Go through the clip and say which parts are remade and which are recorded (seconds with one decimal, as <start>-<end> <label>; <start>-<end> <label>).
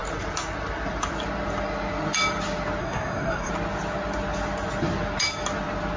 0.0-2.8 recorded; 2.8-3.5 remade; 3.5-6.0 recorded